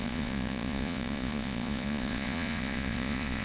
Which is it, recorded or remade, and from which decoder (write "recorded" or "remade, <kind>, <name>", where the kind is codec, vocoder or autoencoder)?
remade, vocoder, Vocos